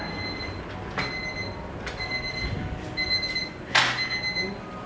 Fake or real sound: real